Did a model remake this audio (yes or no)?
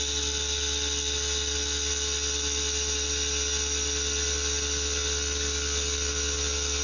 no